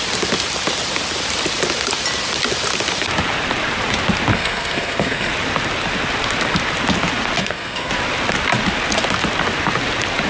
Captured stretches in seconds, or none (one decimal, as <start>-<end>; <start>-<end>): 0.0-4.3; 5.3-7.4; 7.9-10.3